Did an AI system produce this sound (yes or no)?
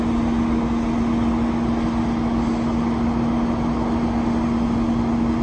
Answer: no